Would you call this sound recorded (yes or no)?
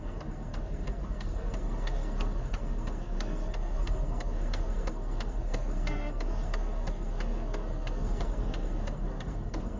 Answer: no